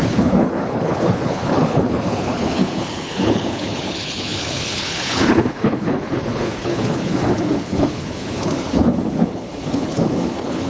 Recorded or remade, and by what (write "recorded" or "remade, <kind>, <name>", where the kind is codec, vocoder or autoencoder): remade, codec, HILCodec